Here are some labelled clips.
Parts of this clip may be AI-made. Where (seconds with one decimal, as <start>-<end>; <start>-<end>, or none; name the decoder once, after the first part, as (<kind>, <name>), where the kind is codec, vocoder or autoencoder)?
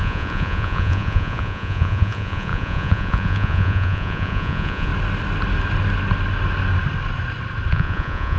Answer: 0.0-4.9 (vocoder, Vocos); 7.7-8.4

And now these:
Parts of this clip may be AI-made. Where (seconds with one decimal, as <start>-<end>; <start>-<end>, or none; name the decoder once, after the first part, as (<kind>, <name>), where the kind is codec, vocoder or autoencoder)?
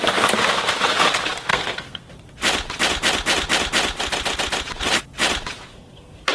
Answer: 1.5-2.1 (codec, SNAC); 5.7-6.3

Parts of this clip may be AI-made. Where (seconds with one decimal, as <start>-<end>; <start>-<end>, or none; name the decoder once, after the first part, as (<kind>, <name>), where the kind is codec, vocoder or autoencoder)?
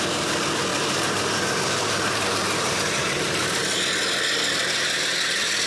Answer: 0.7-3.8 (vocoder, BigVGAN v2)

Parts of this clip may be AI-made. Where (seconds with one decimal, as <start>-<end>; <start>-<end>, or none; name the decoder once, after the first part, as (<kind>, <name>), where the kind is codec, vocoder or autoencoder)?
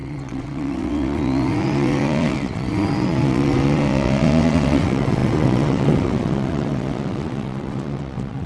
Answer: 0.0-8.5 (vocoder, WaveNeXt)